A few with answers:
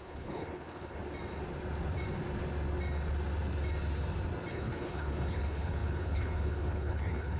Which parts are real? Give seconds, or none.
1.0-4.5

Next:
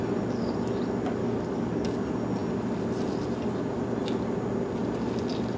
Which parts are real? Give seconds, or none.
0.0-1.2; 2.0-5.6

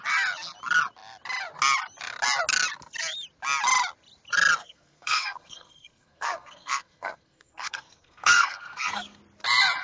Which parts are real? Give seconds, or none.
0.0-4.6; 9.2-9.8